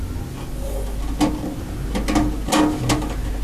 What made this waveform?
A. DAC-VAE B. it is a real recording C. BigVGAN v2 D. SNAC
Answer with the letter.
B